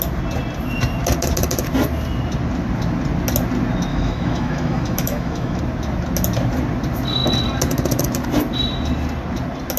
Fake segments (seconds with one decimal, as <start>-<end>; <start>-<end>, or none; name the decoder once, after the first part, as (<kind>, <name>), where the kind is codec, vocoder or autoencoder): 3.9-5.6 (autoencoder, DAC-VAE)